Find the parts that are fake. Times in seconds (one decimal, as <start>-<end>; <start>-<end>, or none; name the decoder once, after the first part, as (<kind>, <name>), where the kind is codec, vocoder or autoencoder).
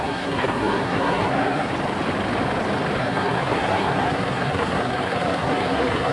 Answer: 0.0-1.7 (codec, SNAC); 3.0-6.1